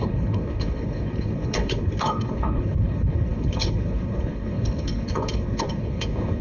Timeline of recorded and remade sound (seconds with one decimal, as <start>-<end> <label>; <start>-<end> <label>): 0.0-6.4 remade